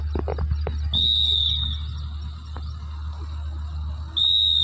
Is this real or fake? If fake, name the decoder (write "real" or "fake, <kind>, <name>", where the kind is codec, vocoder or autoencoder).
real